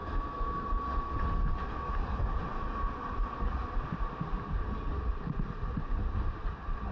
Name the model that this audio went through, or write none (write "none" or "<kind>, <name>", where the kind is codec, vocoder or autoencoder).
none